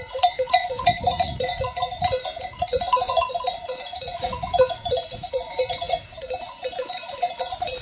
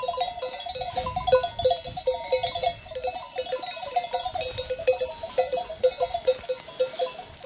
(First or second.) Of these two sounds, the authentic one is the second